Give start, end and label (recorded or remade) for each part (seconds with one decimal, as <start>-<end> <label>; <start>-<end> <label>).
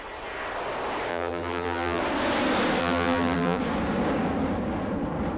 0.0-1.1 recorded; 1.1-2.0 remade; 2.0-2.8 recorded; 2.8-3.6 remade; 3.6-5.4 recorded